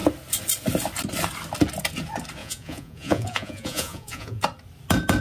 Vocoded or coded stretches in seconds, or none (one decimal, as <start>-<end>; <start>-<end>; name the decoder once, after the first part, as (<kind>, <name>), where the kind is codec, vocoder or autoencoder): 2.4-4.4 (vocoder, Vocos)